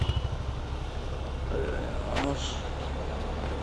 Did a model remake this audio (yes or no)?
no